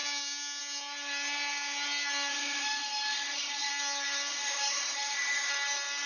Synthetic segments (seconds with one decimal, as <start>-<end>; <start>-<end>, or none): 2.3-3.7; 4.3-5.5